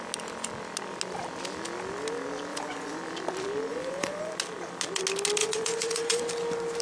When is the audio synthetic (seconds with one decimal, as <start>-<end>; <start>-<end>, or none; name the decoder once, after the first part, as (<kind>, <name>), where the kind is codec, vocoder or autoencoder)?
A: 2.5-3.0 (vocoder, Vocos); 3.7-4.3; 5.4-6.2